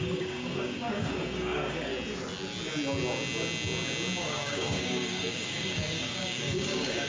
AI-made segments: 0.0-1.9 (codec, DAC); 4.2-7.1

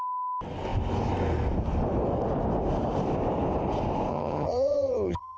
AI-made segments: 4.1-5.4 (vocoder, HiFi-GAN)

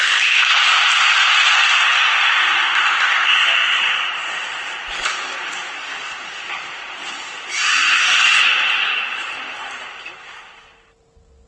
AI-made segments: none

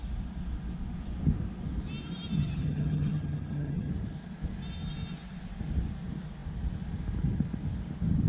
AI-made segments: 2.4-3.9 (vocoder, HiFi-GAN)

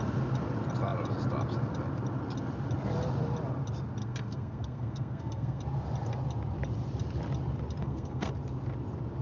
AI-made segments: 4.0-5.6 (codec, SNAC); 7.8-8.3